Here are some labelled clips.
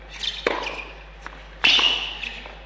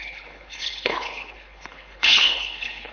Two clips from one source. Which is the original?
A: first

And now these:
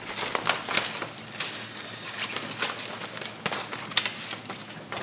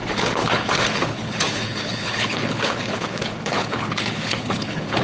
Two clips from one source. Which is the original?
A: first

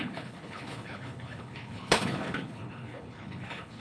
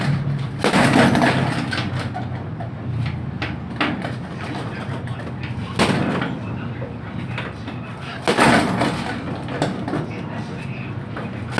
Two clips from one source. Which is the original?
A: second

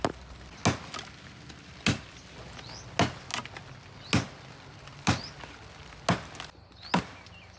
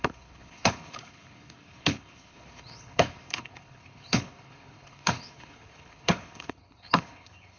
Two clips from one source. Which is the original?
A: first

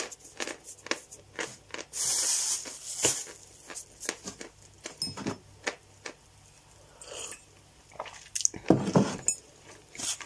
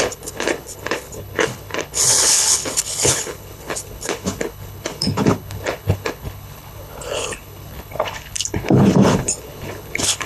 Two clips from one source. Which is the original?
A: first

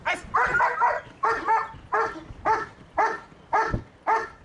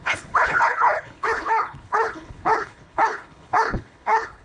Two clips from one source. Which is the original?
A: first